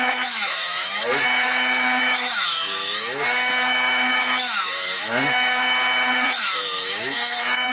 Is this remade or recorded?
remade